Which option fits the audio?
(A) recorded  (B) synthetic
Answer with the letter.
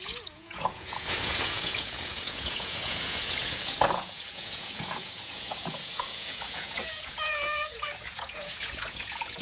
B